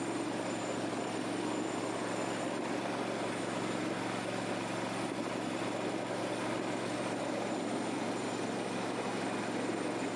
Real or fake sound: real